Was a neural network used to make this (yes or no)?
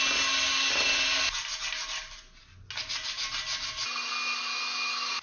no